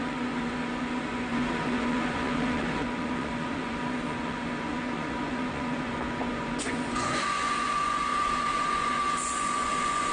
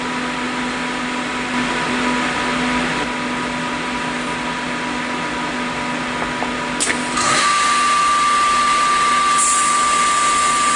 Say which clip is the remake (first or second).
first